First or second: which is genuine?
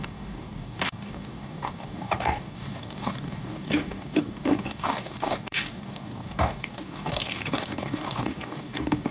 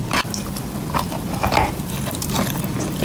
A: second